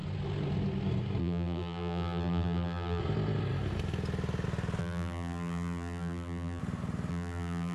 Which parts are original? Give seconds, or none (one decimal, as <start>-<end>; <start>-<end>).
0.0-1.2; 3.0-4.8; 6.6-7.1